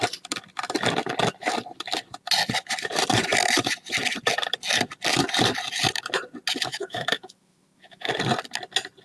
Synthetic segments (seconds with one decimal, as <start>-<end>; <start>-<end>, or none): 6.7-8.1